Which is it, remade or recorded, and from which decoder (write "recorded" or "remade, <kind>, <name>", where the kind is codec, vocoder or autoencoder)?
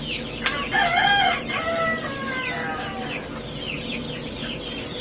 recorded